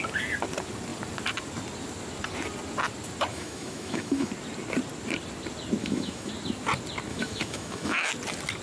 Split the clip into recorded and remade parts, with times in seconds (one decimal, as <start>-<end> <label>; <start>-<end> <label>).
0.0-3.3 recorded; 3.3-4.3 remade; 4.3-5.8 recorded; 5.8-6.3 remade; 6.3-7.1 recorded; 7.1-8.1 remade; 8.1-8.6 recorded